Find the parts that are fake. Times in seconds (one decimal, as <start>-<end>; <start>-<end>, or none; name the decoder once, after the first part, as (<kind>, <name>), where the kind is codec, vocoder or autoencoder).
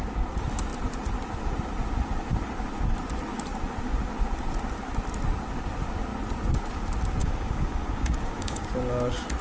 7.2-8.7 (codec, DAC)